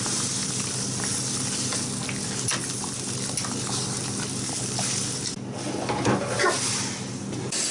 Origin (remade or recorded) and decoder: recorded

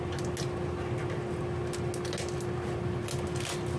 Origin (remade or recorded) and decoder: recorded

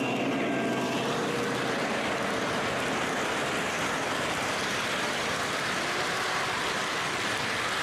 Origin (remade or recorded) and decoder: recorded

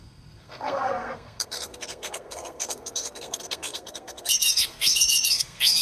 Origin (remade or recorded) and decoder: remade, codec, SNAC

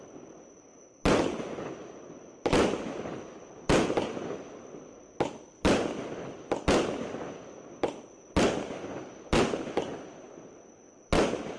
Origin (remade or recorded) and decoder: recorded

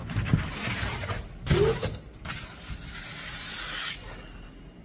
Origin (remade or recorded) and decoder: recorded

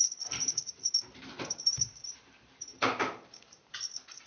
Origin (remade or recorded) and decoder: remade, vocoder, BigVGAN v2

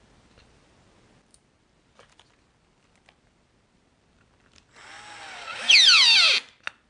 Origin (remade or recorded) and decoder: recorded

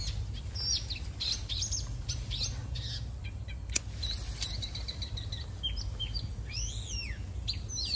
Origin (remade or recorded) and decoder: recorded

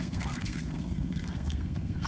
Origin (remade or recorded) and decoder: remade, codec, SNAC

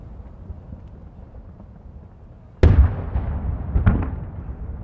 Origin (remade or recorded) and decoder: recorded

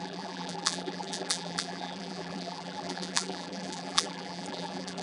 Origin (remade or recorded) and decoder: remade, vocoder, BigVGAN v2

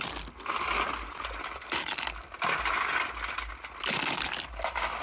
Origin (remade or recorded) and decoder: recorded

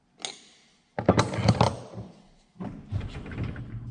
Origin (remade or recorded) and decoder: recorded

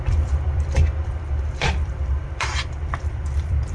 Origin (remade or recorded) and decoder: remade, vocoder, BigVGAN v2